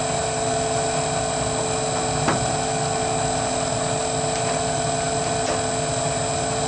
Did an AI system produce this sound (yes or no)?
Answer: no